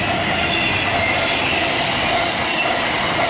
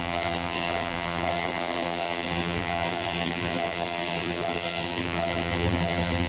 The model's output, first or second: second